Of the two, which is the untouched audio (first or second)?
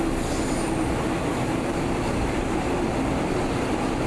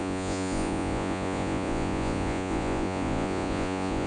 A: first